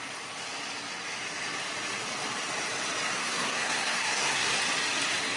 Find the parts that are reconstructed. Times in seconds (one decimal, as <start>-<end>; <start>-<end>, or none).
3.2-4.6